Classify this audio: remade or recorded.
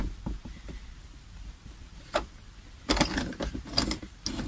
recorded